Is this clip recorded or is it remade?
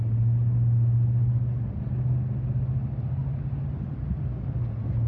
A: recorded